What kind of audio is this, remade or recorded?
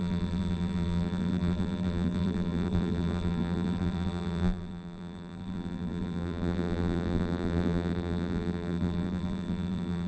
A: remade